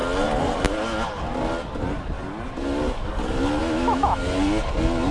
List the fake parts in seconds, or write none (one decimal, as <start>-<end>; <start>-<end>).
3.6-4.2